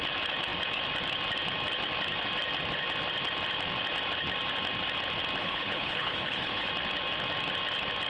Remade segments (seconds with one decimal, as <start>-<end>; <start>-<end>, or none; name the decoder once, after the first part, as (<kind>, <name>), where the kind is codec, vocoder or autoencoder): 5.4-6.7 (codec, HILCodec)